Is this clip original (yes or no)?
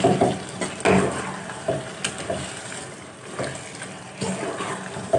yes